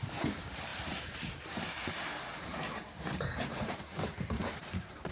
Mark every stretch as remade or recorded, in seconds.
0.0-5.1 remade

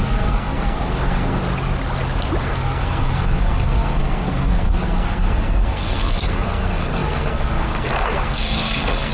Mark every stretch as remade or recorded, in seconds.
0.0-1.4 remade; 1.4-2.4 recorded; 2.4-9.1 remade

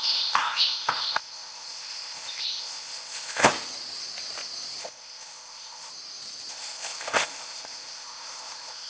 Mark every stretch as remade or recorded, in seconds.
0.0-3.5 remade; 3.5-4.8 recorded; 4.8-5.9 remade; 5.9-6.5 recorded; 6.5-8.9 remade